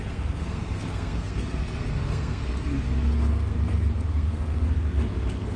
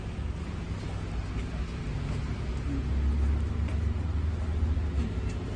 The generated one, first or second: first